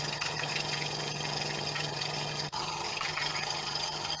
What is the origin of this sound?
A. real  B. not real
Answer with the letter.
B